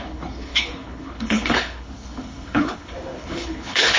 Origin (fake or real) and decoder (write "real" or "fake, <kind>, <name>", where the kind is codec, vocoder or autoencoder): fake, codec, HILCodec